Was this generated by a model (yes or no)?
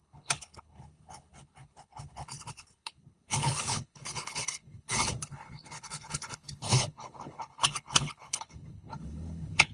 yes